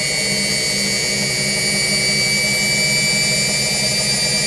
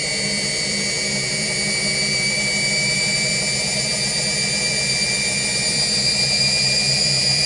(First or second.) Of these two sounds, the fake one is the second